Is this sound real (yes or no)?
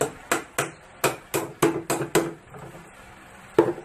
yes